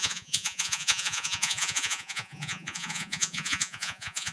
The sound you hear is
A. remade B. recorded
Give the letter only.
A